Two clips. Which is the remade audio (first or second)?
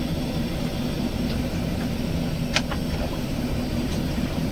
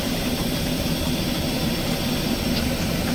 second